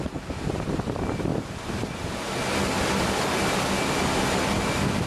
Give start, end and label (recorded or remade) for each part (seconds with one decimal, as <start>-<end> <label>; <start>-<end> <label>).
0.0-5.1 recorded